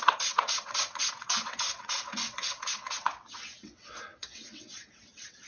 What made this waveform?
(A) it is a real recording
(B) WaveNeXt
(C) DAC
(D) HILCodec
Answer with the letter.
B